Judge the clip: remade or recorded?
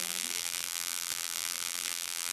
remade